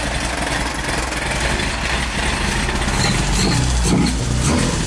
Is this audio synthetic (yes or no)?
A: no